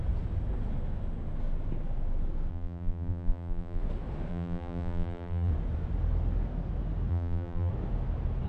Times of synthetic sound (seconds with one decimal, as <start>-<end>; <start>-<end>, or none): 2.5-3.8; 4.3-5.5; 7.1-7.7